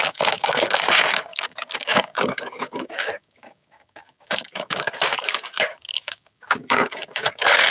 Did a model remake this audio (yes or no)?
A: yes